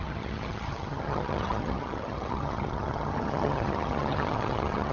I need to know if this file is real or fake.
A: fake